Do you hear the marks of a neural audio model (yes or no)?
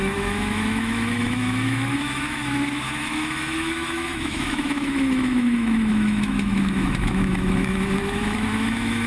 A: yes